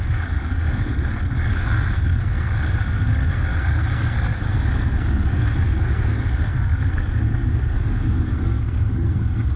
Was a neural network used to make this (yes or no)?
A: yes